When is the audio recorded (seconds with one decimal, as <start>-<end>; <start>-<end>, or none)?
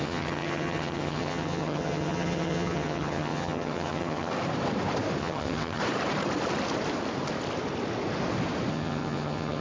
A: 4.3-5.2; 5.8-8.7